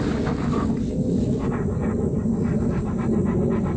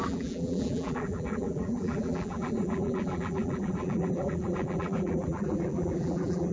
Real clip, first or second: first